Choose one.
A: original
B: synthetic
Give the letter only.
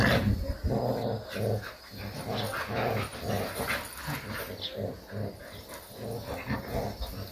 A